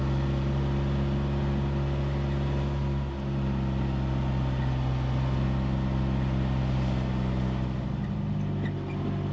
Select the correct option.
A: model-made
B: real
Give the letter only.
B